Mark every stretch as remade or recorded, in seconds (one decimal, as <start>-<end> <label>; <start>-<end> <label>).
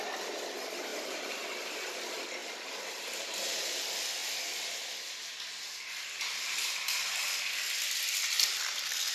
0.0-0.9 recorded; 0.9-1.4 remade; 1.4-2.4 recorded; 2.4-3.8 remade; 3.8-9.1 recorded